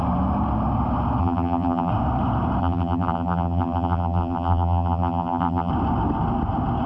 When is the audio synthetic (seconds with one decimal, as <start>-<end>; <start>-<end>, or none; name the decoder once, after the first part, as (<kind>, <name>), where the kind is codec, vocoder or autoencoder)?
1.2-1.9 (vocoder, BigVGAN v2); 2.6-5.7